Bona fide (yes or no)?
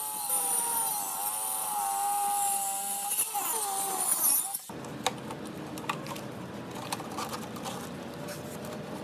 yes